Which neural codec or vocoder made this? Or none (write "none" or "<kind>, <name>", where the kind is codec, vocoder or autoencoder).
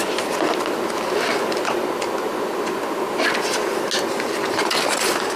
none